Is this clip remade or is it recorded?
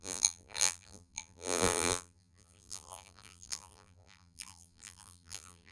remade